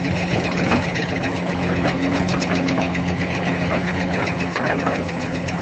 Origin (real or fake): fake